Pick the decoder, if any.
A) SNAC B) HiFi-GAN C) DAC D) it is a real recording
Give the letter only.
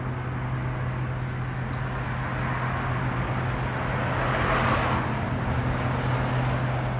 D